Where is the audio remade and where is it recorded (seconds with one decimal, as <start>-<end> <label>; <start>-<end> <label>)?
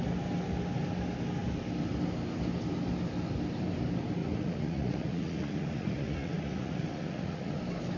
0.0-4.2 recorded; 4.2-7.6 remade; 7.6-8.0 recorded